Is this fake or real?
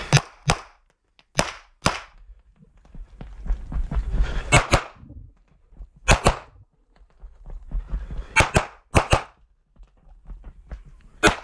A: real